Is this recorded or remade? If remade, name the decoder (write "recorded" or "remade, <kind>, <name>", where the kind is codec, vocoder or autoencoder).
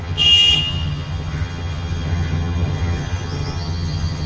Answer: remade, vocoder, HiFi-GAN